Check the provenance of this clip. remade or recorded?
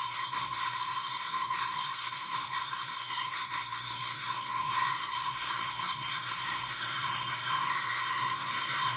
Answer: remade